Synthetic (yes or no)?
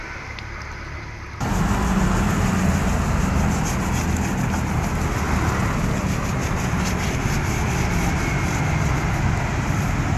no